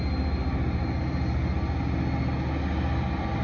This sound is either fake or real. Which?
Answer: real